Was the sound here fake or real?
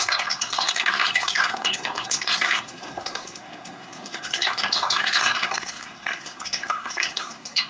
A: fake